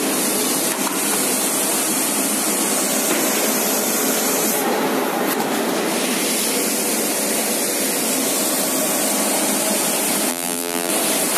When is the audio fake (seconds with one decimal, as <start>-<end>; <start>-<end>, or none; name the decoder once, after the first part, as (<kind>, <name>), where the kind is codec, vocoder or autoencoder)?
10.3-10.9 (vocoder, BigVGAN v2)